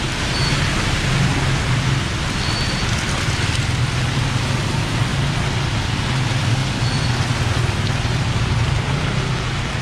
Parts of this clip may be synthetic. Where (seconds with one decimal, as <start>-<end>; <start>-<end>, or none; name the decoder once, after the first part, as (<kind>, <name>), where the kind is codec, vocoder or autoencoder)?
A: none